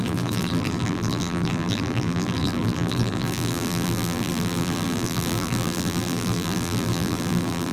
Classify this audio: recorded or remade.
remade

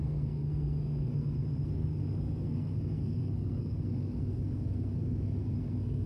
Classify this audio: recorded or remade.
remade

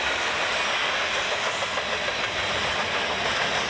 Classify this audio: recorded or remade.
recorded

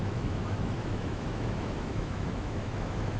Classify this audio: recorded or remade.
remade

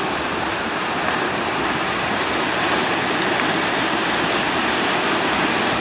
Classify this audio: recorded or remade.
recorded